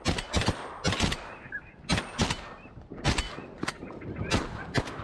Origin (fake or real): real